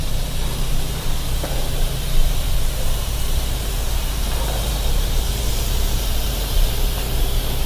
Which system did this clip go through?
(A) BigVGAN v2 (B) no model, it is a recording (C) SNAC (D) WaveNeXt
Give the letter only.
A